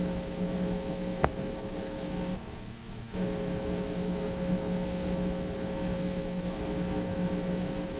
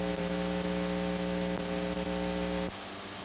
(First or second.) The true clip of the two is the second